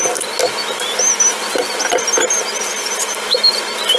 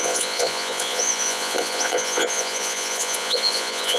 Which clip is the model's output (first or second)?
second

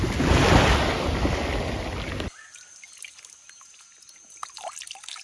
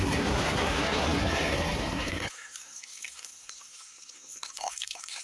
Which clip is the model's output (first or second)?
second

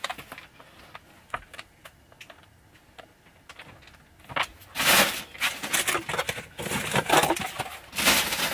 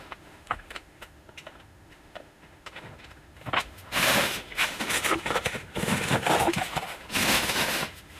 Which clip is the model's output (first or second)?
second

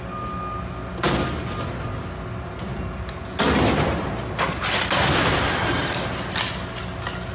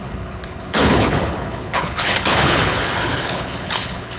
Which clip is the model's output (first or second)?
second